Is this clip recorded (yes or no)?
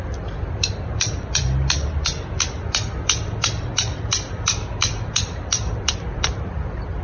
no